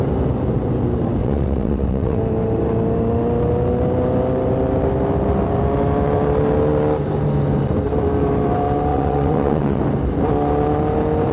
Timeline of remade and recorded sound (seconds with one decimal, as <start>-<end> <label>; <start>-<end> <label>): 0.0-1.2 recorded; 1.2-2.2 remade; 2.2-8.9 recorded; 8.9-9.8 remade; 9.8-11.3 recorded